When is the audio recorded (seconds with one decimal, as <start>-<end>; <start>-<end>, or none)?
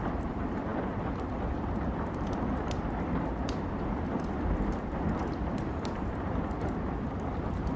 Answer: none